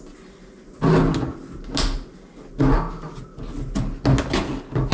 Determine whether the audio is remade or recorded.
recorded